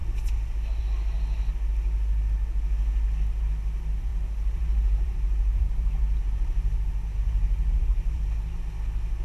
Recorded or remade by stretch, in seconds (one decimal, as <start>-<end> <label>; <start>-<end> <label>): 0.0-4.1 recorded; 4.1-8.6 remade; 8.6-9.2 recorded

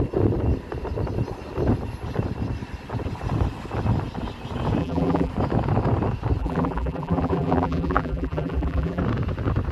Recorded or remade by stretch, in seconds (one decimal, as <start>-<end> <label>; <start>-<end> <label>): 0.0-4.8 recorded; 4.8-5.3 remade; 5.3-6.4 recorded; 6.4-9.0 remade; 9.0-9.7 recorded

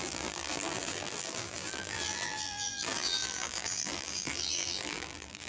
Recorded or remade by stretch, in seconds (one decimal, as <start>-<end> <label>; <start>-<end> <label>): 0.0-5.5 remade

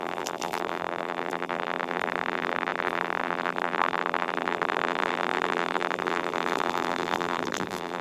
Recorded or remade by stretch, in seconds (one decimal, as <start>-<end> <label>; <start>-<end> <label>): 0.0-8.0 remade

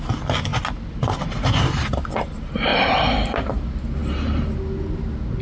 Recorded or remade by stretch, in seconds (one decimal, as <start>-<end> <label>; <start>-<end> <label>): 0.0-0.5 recorded; 0.5-2.0 remade; 2.0-2.7 recorded; 2.7-3.5 remade; 3.5-5.4 recorded

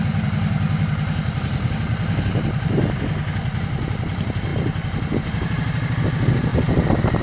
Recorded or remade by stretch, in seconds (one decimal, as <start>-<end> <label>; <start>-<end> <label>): 0.0-7.2 recorded

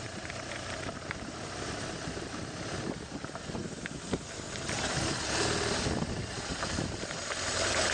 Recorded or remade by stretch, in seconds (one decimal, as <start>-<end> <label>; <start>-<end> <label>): 0.0-3.6 remade; 3.6-6.1 recorded; 6.1-7.9 remade

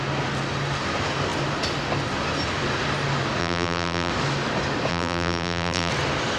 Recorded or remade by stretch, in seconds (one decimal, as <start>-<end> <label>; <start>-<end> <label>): 0.0-3.4 recorded; 3.4-4.1 remade; 4.1-4.9 recorded; 4.9-5.9 remade; 5.9-6.4 recorded